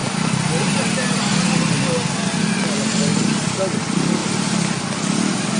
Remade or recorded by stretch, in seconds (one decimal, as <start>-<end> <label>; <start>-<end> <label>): 0.0-5.6 recorded